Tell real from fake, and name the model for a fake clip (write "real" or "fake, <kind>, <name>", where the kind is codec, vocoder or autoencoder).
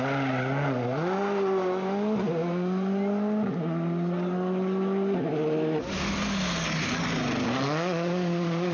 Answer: real